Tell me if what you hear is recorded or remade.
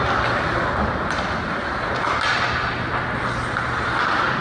recorded